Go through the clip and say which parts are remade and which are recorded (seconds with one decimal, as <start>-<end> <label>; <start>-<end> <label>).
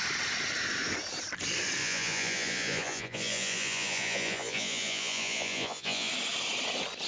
0.0-1.8 recorded; 1.8-6.1 remade; 6.1-7.1 recorded